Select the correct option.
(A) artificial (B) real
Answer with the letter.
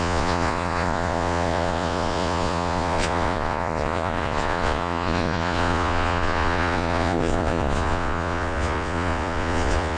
A